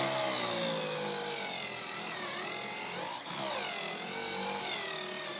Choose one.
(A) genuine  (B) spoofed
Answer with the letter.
A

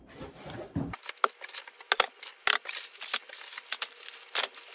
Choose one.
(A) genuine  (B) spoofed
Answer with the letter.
A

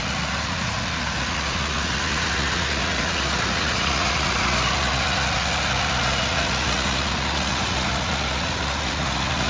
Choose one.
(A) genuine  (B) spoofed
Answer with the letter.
B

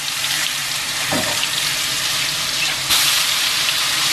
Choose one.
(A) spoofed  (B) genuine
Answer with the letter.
A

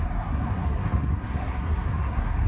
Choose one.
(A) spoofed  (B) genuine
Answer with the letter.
A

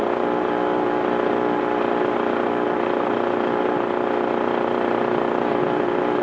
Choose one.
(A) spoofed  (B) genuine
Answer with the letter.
B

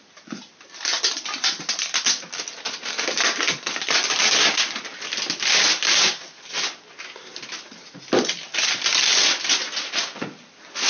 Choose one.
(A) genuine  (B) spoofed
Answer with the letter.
A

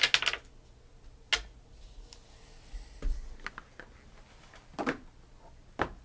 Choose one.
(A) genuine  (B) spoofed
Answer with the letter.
A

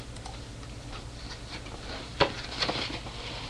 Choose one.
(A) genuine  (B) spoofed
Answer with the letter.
A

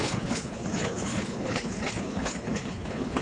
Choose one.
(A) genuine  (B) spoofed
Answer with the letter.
B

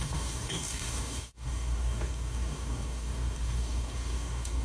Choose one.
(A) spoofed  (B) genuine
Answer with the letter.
A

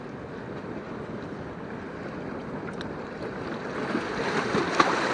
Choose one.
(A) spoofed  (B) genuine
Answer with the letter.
A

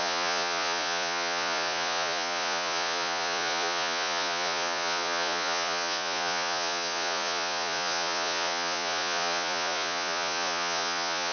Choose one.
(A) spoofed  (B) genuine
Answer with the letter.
A